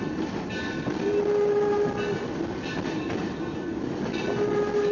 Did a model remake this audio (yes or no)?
no